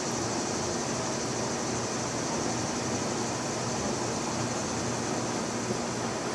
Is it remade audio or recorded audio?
recorded